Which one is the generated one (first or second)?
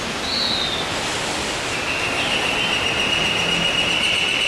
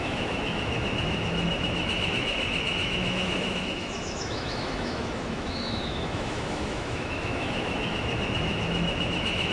second